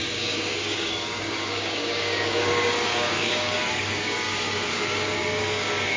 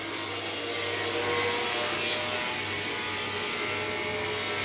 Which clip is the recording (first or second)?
second